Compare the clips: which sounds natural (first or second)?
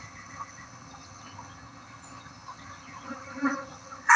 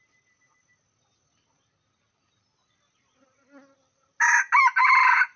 second